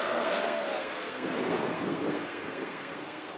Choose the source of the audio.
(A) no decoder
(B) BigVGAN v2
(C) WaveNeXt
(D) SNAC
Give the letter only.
D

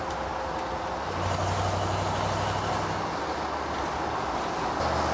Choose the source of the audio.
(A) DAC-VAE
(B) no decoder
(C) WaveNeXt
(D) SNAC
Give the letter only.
B